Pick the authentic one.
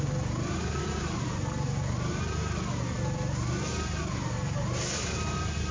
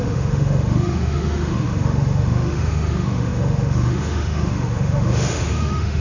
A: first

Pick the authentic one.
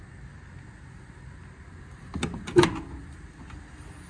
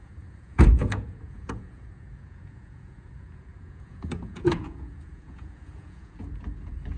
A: first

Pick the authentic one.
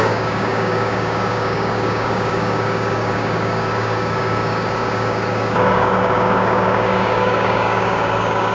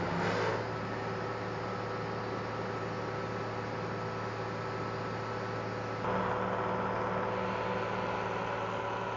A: second